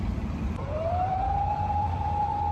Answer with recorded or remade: remade